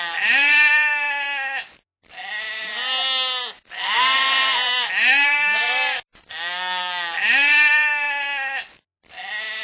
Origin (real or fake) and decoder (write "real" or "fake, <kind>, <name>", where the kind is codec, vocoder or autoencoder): real